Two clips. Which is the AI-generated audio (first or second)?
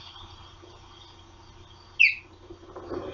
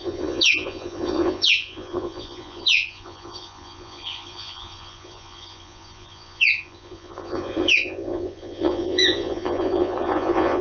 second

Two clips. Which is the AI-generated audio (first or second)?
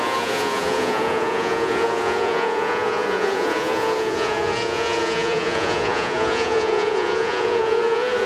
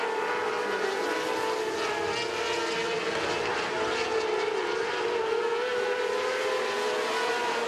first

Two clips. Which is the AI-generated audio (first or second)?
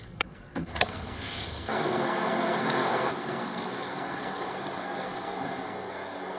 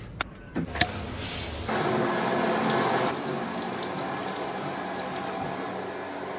first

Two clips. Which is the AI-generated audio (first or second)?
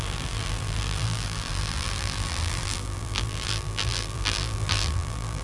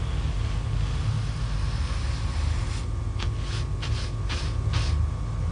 first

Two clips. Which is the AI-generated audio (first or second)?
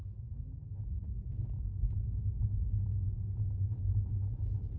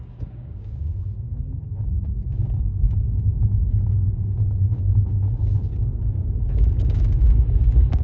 second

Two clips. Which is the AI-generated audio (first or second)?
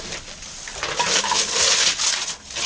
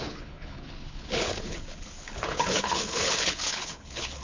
second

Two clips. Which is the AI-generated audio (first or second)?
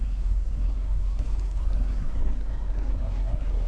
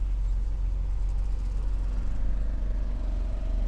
first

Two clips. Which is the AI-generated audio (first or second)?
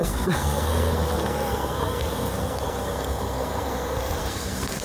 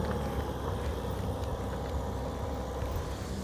first